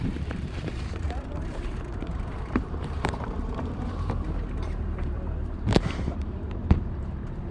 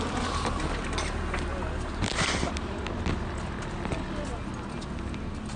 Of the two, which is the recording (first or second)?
second